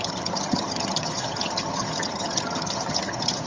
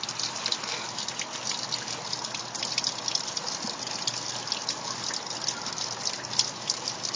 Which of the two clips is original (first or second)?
second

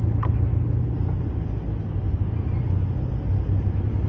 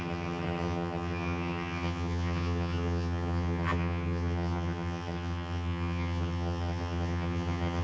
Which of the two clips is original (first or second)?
first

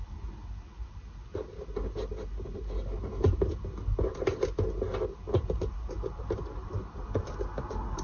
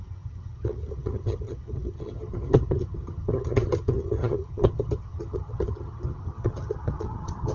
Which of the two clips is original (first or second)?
first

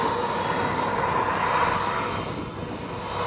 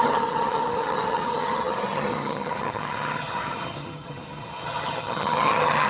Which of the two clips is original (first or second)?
first